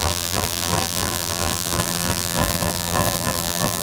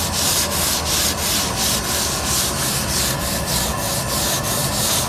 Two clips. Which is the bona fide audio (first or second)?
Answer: second